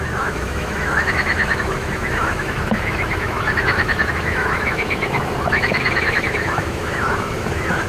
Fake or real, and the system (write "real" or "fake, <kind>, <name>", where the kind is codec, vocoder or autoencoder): fake, autoencoder, DAC-VAE